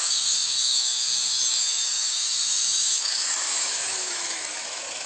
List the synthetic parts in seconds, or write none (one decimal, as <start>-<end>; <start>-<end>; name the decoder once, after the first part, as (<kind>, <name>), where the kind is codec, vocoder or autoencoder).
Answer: 0.0-5.1 (autoencoder, DAC-VAE)